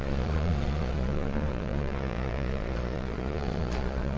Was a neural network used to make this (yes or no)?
yes